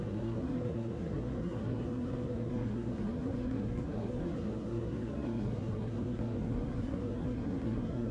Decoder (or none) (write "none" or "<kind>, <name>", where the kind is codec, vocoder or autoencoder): codec, SNAC